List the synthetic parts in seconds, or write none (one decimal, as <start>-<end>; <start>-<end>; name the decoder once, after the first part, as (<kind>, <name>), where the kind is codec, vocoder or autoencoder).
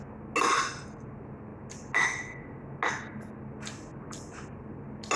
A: none